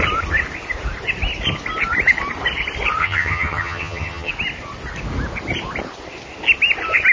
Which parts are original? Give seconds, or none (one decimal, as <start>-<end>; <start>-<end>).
0.0-3.0; 4.3-7.1